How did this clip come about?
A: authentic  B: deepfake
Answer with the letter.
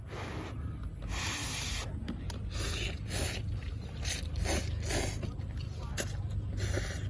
A